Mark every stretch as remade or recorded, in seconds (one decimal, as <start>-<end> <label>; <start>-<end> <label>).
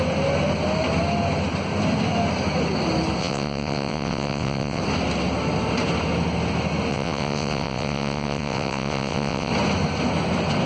0.0-3.2 recorded; 3.2-4.8 remade; 4.8-6.9 recorded; 6.9-9.5 remade; 9.5-10.7 recorded